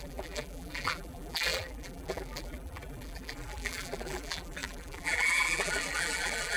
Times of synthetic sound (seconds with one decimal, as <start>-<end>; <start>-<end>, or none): 0.0-6.6